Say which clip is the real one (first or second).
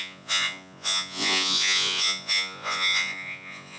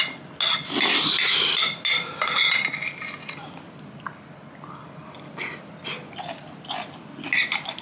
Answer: second